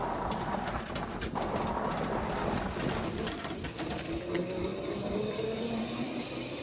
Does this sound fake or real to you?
fake